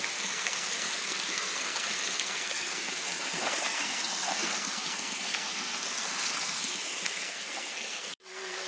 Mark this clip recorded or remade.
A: remade